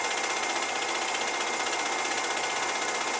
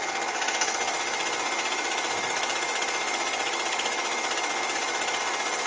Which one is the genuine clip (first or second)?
first